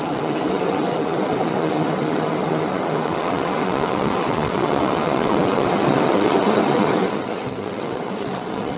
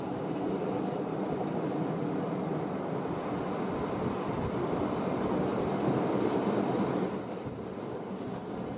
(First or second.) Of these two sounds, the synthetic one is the first